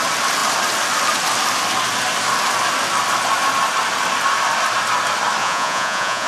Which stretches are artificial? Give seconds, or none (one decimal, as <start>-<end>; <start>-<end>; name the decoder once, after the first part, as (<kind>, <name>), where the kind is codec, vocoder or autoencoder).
5.4-6.3 (vocoder, Vocos)